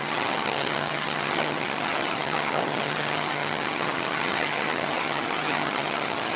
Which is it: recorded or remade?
remade